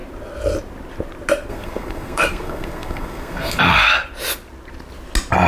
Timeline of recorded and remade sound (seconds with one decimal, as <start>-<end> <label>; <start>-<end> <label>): 0.0-1.5 recorded; 1.5-3.6 remade; 3.6-5.5 recorded